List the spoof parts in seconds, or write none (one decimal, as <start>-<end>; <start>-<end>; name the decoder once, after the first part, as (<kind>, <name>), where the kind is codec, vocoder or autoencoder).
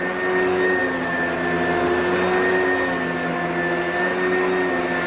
none